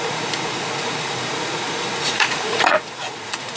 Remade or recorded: remade